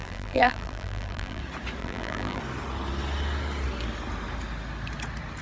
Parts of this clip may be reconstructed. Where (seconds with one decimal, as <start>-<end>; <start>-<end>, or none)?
0.0-1.4; 1.8-2.4